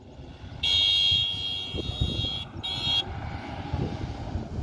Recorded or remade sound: recorded